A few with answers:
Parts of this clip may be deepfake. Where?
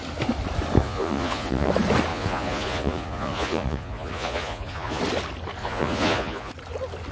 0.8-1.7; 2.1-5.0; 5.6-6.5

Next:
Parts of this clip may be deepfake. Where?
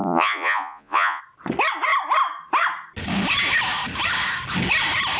0.0-1.2